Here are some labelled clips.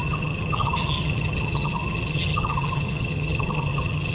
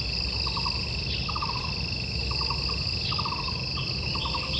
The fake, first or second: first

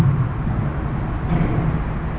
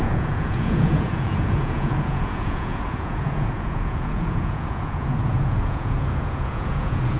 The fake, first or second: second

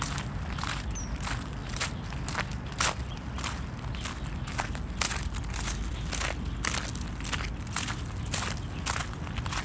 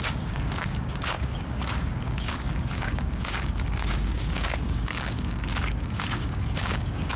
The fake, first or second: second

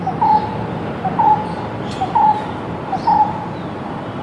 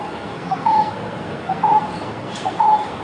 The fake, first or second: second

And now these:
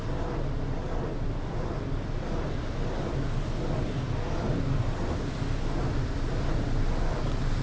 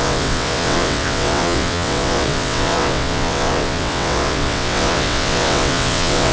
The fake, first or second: second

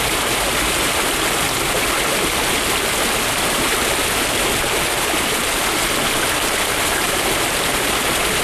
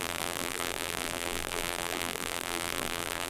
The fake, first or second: second